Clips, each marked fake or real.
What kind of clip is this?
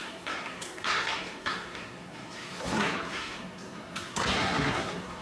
fake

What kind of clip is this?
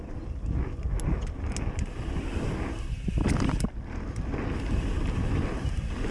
real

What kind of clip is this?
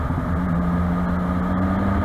real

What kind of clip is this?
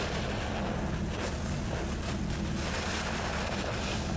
real